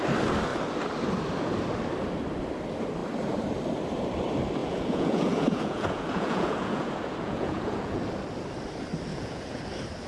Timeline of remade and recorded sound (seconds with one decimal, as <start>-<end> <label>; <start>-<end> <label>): 0.0-4.6 recorded; 4.6-8.0 remade; 8.0-9.1 recorded; 9.1-9.6 remade; 9.6-10.1 recorded